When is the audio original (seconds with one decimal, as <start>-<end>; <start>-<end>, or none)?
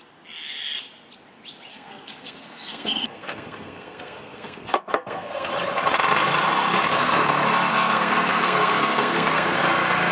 0.0-1.7; 5.5-7.7; 9.6-10.1